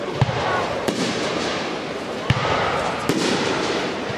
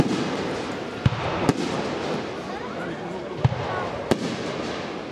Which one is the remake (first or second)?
first